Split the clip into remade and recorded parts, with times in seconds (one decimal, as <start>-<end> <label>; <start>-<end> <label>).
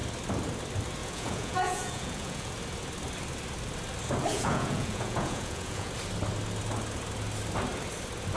0.0-1.0 recorded; 1.0-2.5 remade; 2.5-4.3 recorded; 4.3-5.9 remade; 5.9-8.4 recorded